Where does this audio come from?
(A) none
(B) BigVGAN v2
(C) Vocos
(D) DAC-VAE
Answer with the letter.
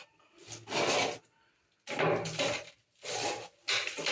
A